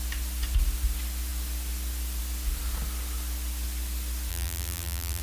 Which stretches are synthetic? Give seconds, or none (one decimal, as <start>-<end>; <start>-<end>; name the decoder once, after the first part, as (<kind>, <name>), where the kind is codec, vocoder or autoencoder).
4.3-5.2 (vocoder, BigVGAN v2)